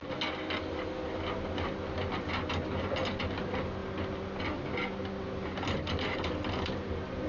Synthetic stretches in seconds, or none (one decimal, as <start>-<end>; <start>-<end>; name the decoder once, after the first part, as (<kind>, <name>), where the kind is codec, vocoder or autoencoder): none